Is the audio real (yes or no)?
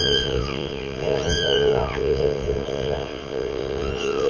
no